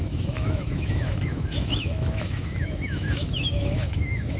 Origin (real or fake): fake